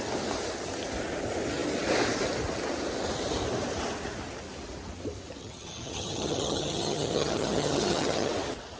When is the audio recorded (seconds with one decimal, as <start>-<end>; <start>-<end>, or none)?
0.0-5.4; 8.3-8.8